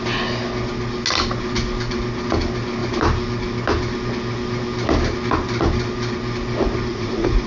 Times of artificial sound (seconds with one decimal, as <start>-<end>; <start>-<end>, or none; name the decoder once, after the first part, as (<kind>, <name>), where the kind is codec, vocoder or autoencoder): 6.9-7.5 (vocoder, Vocos)